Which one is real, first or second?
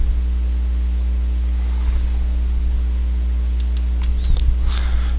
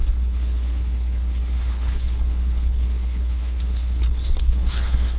first